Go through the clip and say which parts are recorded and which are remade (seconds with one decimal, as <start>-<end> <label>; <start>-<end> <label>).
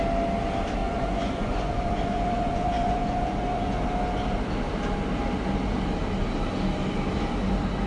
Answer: 0.0-0.8 recorded; 0.8-3.8 remade; 3.8-7.9 recorded